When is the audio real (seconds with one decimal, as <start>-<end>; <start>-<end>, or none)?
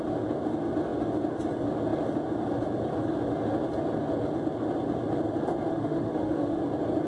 0.0-5.7; 6.6-7.1